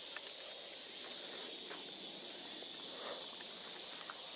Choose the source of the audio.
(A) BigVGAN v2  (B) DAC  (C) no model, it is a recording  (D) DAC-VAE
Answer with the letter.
C